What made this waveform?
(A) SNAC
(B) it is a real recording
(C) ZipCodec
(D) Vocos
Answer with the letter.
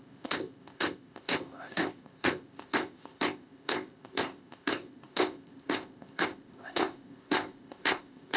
C